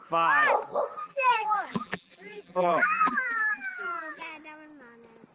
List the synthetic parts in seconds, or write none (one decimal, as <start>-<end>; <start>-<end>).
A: 1.0-4.2

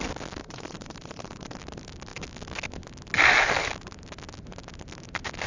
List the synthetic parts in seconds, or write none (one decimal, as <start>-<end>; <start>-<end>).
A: 0.4-1.6

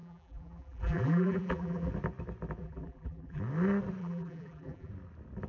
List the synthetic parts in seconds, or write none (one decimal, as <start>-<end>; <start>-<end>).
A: 0.0-1.9; 2.6-3.4; 4.0-4.9

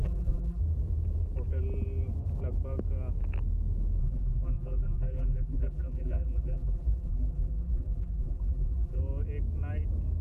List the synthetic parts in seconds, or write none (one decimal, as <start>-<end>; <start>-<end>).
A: 0.0-0.6; 4.0-9.0

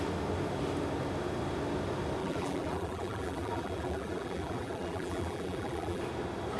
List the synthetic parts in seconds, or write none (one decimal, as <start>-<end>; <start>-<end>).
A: 2.2-6.0

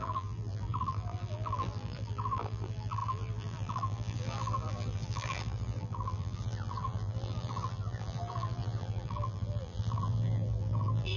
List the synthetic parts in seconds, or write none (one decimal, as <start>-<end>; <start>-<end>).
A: 0.0-11.2

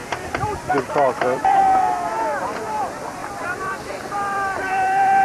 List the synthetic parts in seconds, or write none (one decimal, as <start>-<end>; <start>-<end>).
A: 0.0-1.6; 2.4-5.2

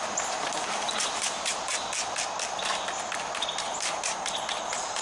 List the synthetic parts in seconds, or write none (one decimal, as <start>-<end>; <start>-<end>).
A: 0.0-1.7; 3.6-5.0